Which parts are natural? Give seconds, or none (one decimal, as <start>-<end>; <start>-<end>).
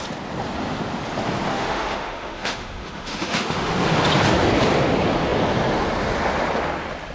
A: 0.0-1.5; 3.7-7.1